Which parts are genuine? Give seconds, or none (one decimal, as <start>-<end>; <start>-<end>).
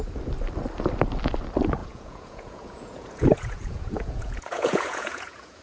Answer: 0.0-1.8